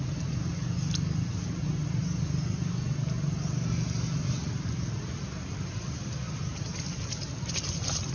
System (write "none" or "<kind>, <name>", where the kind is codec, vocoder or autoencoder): none